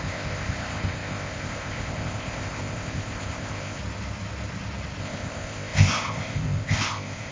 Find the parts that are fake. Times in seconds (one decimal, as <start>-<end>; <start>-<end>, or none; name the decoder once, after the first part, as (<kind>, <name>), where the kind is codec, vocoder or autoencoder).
0.0-3.8 (codec, ZipCodec); 5.0-7.3

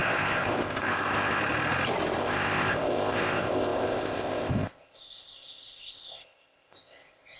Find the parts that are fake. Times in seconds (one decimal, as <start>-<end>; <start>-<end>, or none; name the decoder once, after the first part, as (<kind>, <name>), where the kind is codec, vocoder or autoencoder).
0.0-1.4 (codec, ZipCodec); 2.2-7.4